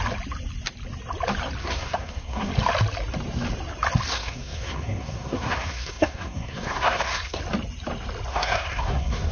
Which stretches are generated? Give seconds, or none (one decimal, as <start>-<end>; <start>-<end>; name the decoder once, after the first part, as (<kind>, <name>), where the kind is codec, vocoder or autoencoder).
1.6-2.5 (codec, SNAC); 4.1-7.4; 8.3-9.3